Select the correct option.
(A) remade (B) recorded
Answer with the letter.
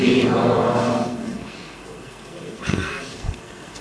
A